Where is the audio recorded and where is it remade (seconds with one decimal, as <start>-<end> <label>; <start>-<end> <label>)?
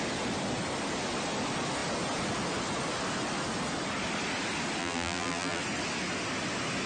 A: 0.0-4.8 recorded; 4.8-5.6 remade; 5.6-6.9 recorded